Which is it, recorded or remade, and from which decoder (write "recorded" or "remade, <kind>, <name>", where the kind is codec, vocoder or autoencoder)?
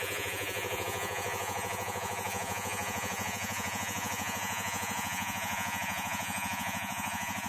remade, vocoder, Vocos